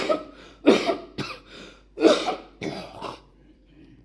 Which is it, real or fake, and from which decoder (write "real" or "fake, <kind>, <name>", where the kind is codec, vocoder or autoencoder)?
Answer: fake, vocoder, BigVGAN v2